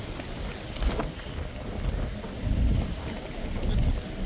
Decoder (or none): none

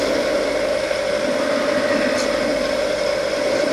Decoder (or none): none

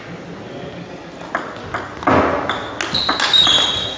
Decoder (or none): none